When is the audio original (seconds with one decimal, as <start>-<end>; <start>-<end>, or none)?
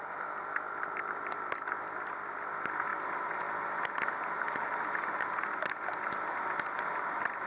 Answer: 0.0-7.5